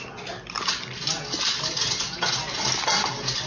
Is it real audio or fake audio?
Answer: real